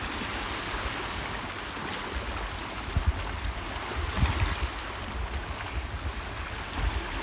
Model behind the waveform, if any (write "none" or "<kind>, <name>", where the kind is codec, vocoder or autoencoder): none